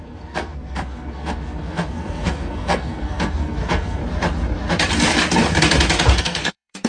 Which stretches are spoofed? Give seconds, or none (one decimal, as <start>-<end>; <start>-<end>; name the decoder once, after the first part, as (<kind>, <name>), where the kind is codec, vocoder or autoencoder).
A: 0.0-4.0 (codec, SNAC); 6.2-6.9